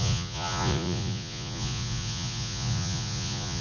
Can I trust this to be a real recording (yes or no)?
no